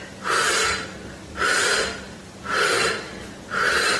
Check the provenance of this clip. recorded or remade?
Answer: recorded